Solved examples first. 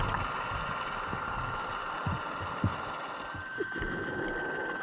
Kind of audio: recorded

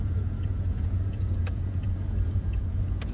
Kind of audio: remade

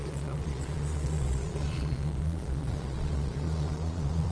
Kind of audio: remade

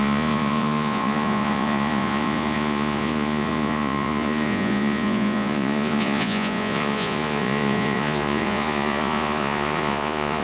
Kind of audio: remade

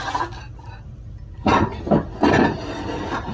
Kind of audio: recorded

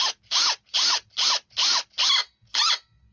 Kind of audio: recorded